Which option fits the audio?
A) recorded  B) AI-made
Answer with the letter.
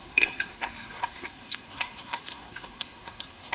B